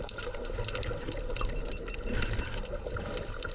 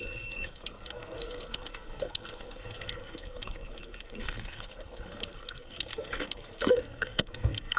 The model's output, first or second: second